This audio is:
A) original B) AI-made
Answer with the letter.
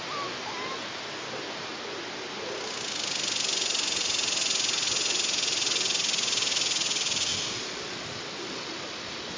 A